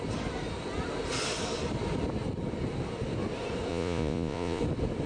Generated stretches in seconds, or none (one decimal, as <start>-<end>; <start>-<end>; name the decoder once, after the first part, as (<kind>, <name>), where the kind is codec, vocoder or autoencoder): 3.7-4.6 (vocoder, Vocos)